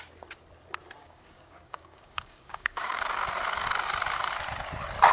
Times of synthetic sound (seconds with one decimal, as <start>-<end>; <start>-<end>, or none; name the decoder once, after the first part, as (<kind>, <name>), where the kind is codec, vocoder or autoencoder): 1.0-3.0 (codec, DAC)